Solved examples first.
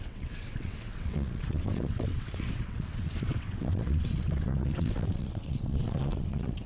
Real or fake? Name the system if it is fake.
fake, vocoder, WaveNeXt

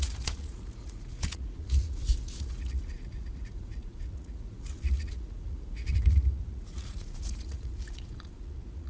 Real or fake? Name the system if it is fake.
fake, vocoder, Vocos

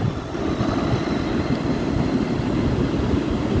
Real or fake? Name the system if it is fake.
real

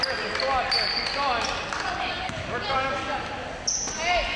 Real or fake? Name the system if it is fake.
real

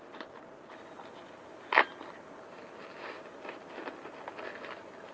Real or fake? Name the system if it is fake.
real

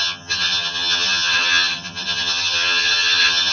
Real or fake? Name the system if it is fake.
fake, vocoder, HiFi-GAN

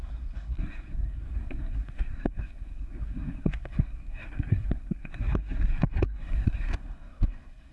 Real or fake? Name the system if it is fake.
fake, codec, SNAC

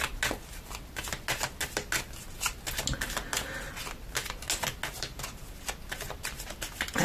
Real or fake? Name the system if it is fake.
real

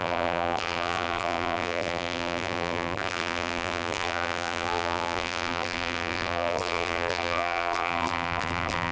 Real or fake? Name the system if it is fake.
fake, vocoder, BigVGAN v2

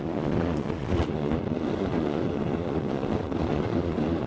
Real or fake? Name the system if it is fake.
fake, vocoder, Vocos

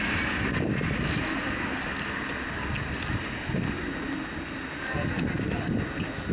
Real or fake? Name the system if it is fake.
real